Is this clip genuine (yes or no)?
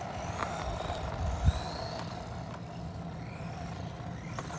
yes